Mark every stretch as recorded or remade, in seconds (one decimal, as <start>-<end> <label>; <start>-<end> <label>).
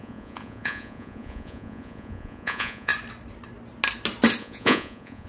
0.0-2.9 remade; 2.9-4.4 recorded; 4.4-5.3 remade